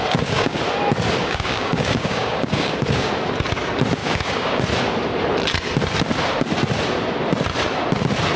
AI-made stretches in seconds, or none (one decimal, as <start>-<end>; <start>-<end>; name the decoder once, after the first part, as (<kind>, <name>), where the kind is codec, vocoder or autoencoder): 0.0-0.6 (codec, DAC); 1.2-3.1; 4.0-4.6